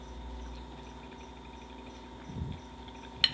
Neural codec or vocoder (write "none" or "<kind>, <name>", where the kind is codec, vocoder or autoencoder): none